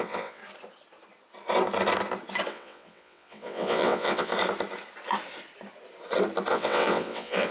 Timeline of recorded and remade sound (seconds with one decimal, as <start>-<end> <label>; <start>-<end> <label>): 0.0-0.4 remade; 0.4-2.5 recorded; 2.5-4.3 remade; 4.3-6.5 recorded; 6.5-7.5 remade